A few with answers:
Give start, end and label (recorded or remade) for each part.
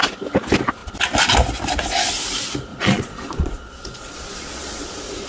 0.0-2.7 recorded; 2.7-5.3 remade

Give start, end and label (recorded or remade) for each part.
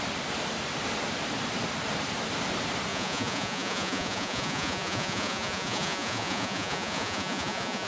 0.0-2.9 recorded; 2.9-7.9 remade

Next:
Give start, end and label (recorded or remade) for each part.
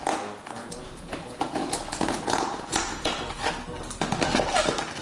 0.0-0.6 recorded; 0.6-3.1 remade; 3.1-5.0 recorded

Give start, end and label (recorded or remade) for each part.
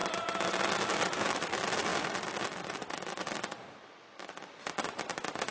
0.0-5.5 recorded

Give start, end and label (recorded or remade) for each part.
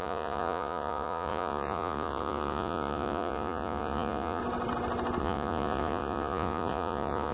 0.0-4.4 remade; 4.4-5.2 recorded; 5.2-7.3 remade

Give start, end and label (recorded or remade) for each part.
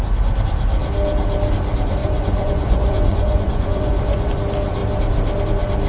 0.0-2.0 recorded; 2.0-4.3 remade; 4.3-5.9 recorded